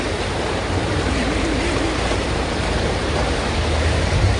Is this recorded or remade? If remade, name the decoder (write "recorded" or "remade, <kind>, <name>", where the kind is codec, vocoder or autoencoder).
remade, vocoder, BigVGAN v2